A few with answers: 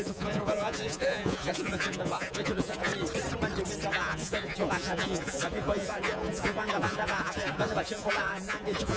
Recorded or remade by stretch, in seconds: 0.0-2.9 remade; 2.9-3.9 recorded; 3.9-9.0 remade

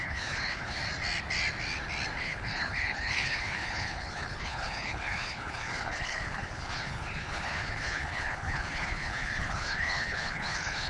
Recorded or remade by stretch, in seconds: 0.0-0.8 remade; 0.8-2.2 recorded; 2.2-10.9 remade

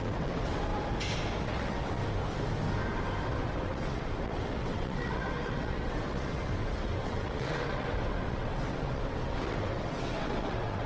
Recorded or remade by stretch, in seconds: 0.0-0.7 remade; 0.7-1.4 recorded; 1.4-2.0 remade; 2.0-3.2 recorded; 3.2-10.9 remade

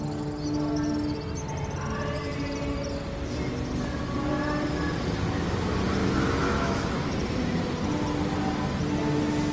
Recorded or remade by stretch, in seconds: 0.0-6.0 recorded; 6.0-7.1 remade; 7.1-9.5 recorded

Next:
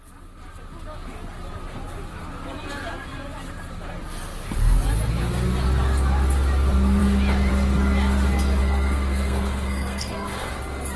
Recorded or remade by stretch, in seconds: 0.0-8.6 recorded; 8.6-10.5 remade; 10.5-11.0 recorded

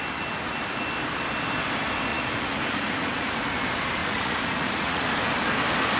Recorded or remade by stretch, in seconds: 0.0-2.1 recorded; 2.1-3.3 remade; 3.3-4.0 recorded; 4.0-5.1 remade; 5.1-6.0 recorded

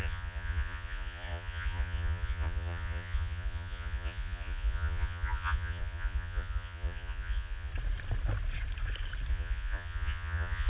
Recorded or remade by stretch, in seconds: 0.0-7.7 remade; 7.7-9.3 recorded; 9.3-10.7 remade